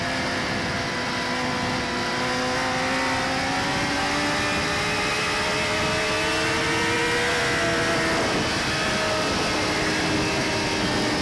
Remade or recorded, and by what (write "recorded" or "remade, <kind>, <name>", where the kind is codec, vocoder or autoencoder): recorded